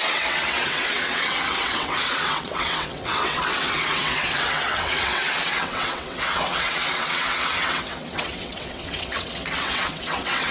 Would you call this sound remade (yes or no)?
yes